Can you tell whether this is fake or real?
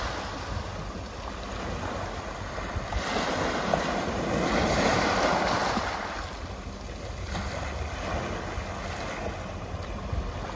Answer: real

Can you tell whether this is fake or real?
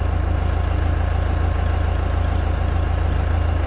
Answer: real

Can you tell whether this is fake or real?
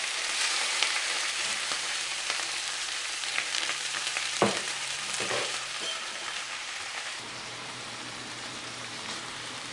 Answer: fake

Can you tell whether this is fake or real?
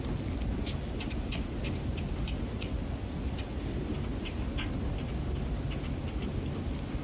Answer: real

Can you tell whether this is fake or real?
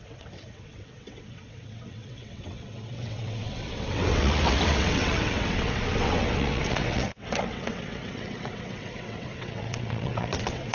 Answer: fake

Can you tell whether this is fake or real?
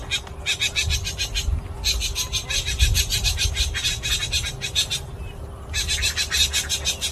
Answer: real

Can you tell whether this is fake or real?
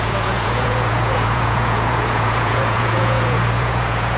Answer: fake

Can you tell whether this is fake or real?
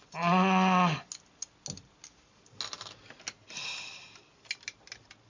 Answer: real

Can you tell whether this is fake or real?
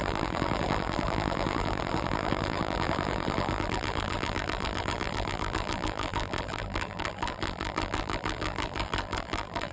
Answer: fake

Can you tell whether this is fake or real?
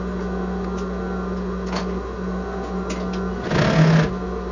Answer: real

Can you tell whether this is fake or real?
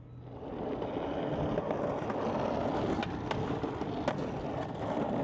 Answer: real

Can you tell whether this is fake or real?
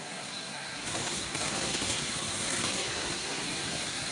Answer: fake